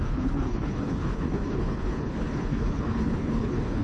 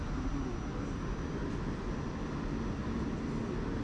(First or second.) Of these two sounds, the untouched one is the second